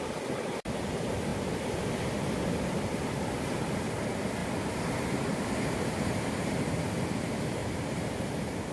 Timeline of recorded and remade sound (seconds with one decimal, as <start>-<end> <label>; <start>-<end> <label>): 0.0-1.3 recorded; 1.3-1.9 remade; 1.9-4.4 recorded; 4.4-7.1 remade; 7.1-7.6 recorded; 7.6-8.7 remade